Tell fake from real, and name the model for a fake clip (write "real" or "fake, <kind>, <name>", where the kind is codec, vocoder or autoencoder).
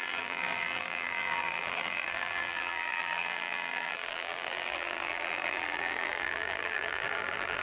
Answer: fake, vocoder, BigVGAN v2